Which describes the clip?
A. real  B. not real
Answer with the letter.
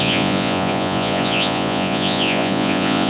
B